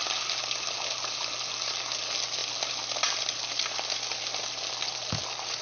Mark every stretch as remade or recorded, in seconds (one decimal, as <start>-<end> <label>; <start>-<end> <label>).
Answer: 0.0-5.6 recorded